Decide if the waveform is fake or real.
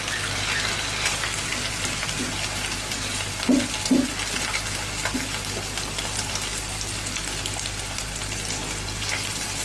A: real